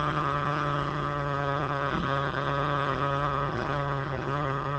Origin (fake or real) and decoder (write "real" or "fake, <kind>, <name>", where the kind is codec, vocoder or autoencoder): fake, vocoder, HiFi-GAN